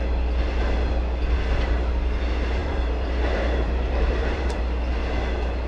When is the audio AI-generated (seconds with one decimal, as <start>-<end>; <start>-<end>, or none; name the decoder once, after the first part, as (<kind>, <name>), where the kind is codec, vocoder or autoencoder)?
2.6-4.6 (vocoder, BigVGAN v2)